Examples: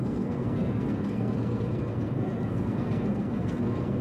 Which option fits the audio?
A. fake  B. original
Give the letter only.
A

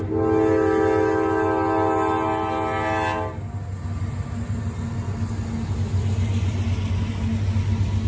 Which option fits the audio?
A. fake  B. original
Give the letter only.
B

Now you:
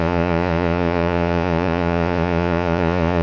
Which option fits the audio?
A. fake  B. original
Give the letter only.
A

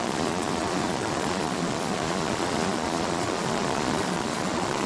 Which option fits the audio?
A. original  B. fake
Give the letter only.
B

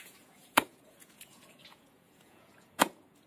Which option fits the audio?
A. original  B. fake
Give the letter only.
B